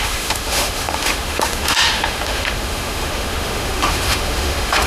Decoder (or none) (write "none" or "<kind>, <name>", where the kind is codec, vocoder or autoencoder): autoencoder, DAC-VAE